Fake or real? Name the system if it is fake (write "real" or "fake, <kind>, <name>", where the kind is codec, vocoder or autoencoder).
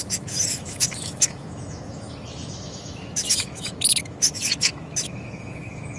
fake, autoencoder, DAC-VAE